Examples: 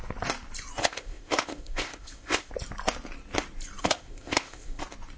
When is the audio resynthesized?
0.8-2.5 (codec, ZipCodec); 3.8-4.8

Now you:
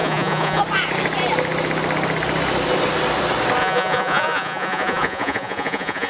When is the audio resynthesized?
0.0-0.6 (vocoder, Vocos); 3.6-6.1

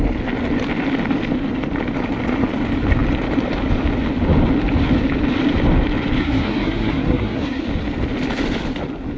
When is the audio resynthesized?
6.2-7.6 (codec, SNAC)

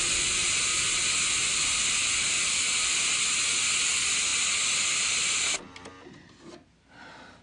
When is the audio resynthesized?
2.0-2.6 (vocoder, BigVGAN v2)

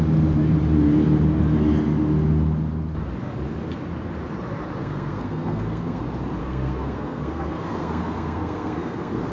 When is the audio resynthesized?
4.8-6.0 (codec, SNAC); 6.4-9.3

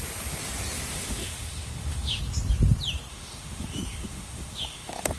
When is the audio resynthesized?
0.9-2.2 (autoencoder, DAC-VAE); 3.1-5.2